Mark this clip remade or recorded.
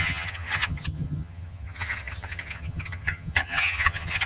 remade